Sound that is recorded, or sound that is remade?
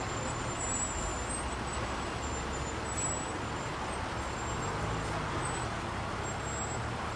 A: recorded